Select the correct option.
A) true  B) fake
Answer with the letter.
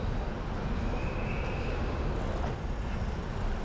A